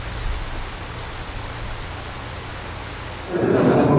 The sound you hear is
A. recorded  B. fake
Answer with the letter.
A